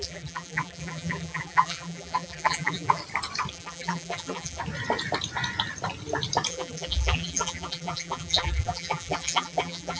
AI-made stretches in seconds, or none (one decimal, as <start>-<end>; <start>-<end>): 0.0-3.0; 3.5-4.6; 6.5-10.0